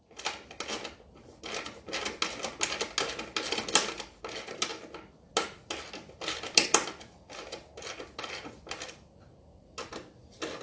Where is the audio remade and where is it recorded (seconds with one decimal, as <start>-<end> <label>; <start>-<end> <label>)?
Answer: 0.0-10.6 recorded